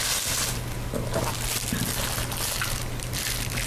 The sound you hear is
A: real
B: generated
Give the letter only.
A